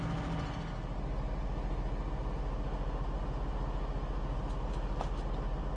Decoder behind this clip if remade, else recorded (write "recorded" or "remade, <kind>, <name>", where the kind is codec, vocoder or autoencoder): recorded